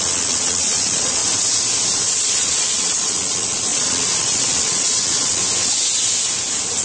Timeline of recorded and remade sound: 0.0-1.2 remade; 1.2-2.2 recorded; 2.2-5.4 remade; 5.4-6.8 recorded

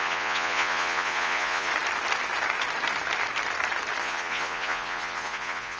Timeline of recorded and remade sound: 0.0-1.7 remade; 1.7-4.0 recorded; 4.0-5.8 remade